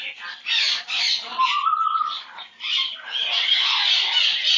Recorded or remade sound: recorded